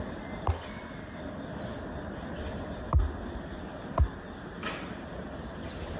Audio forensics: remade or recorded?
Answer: recorded